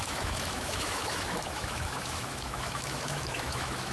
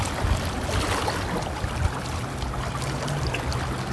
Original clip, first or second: second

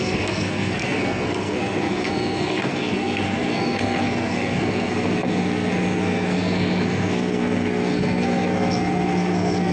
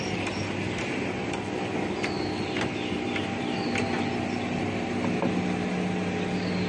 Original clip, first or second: second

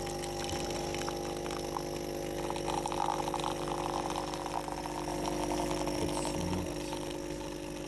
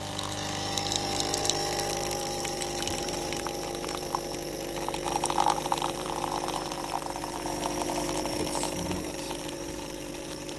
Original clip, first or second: first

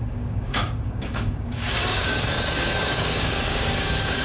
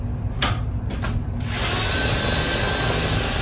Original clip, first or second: second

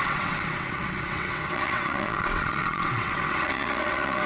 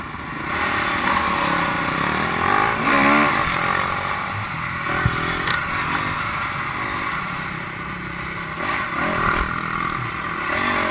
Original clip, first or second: second